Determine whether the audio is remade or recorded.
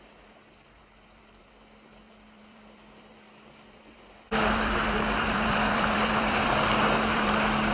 remade